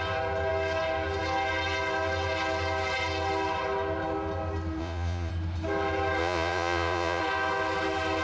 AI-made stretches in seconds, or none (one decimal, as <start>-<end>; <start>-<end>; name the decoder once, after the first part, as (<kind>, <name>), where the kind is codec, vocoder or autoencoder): 4.8-5.3 (vocoder, Vocos); 6.2-7.2